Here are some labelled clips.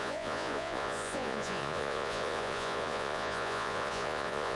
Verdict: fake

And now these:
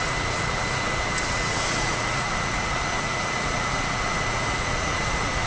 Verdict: fake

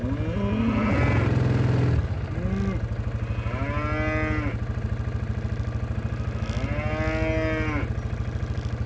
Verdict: real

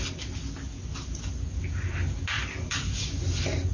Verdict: real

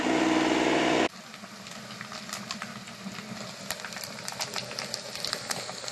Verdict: real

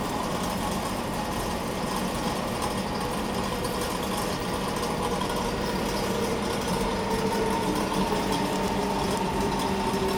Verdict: fake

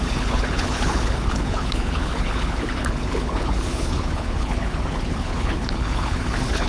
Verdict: fake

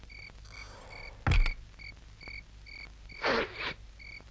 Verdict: real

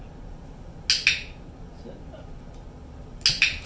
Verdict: real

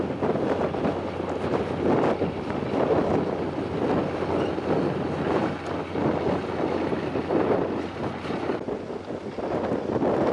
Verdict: real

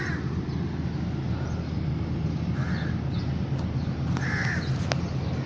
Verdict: real